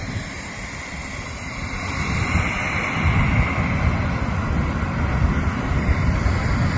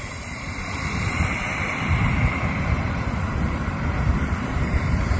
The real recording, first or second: first